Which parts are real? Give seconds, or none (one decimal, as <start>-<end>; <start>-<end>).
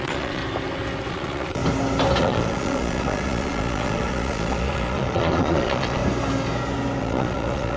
0.4-1.1; 1.6-2.2; 6.0-7.0